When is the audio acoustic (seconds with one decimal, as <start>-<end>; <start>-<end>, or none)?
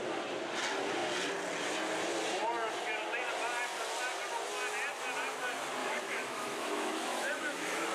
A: 0.0-5.8